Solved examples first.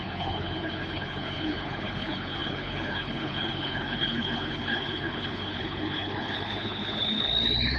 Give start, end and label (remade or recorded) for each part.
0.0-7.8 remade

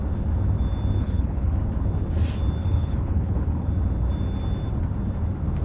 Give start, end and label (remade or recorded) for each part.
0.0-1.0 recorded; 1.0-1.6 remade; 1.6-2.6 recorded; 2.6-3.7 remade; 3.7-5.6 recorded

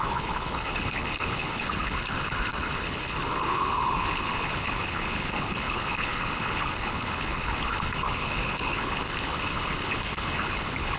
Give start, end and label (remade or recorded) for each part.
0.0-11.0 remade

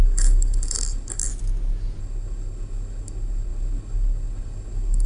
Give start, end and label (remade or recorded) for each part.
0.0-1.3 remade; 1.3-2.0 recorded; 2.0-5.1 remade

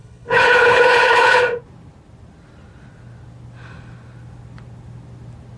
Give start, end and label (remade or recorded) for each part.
0.0-1.4 remade; 1.4-5.6 recorded

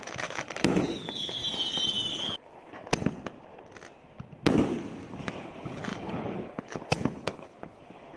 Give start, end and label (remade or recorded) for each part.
0.0-1.4 remade; 1.4-2.1 recorded; 2.1-2.9 remade; 2.9-5.4 recorded; 5.4-8.2 remade

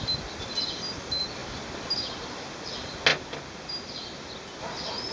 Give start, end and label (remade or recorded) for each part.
0.0-5.1 recorded